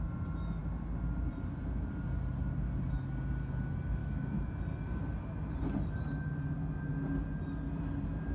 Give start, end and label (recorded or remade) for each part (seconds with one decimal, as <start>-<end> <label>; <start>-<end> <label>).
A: 0.0-4.0 recorded; 4.0-4.5 remade; 4.5-8.3 recorded